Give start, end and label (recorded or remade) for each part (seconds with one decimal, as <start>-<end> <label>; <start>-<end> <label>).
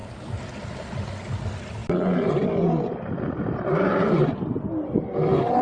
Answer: 0.0-5.6 recorded